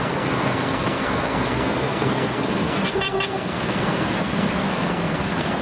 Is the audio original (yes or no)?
no